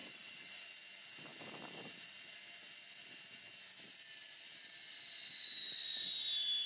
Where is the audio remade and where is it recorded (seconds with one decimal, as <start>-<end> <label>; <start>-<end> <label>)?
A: 0.0-0.6 remade; 0.6-6.7 recorded